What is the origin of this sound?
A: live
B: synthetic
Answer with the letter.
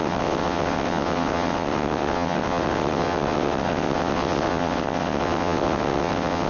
B